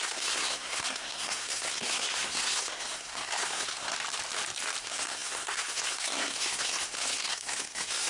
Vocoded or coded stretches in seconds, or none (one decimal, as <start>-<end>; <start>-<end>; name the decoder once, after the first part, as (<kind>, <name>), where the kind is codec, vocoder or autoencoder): 0.0-3.9 (codec, SNAC); 4.8-8.1